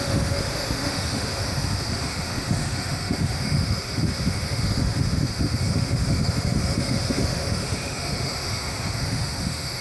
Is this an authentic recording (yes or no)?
no